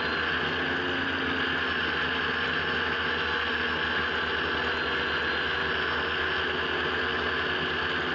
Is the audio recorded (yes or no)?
yes